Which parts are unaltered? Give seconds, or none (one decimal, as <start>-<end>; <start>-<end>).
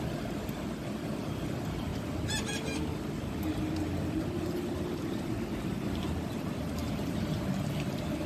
0.0-6.8; 7.5-8.3